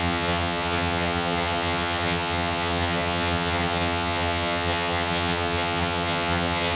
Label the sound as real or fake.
fake